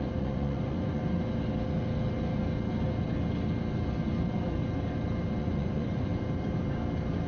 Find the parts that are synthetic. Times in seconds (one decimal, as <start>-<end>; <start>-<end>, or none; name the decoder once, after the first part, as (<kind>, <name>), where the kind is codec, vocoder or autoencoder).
0.0-1.0 (vocoder, Vocos); 5.4-6.1